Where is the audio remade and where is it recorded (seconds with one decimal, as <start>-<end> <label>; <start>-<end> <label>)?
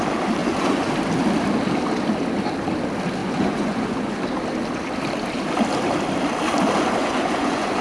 0.0-0.4 recorded; 0.4-0.9 remade; 0.9-3.2 recorded; 3.2-4.2 remade; 4.2-7.0 recorded; 7.0-7.8 remade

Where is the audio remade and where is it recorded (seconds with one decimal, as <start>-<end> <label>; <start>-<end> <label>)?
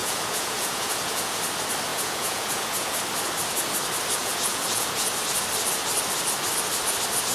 0.0-1.4 remade; 1.4-1.9 recorded; 1.9-2.9 remade; 2.9-4.2 recorded; 4.2-5.1 remade; 5.1-7.3 recorded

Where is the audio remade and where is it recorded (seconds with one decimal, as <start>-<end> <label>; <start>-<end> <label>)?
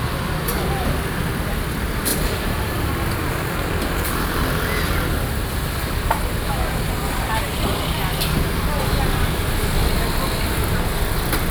0.0-11.5 recorded